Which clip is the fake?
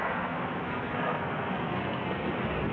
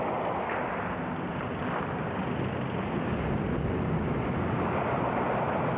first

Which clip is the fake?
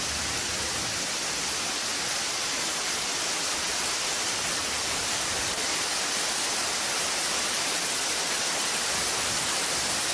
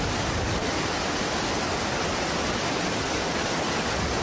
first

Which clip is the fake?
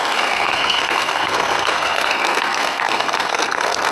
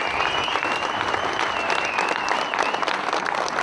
first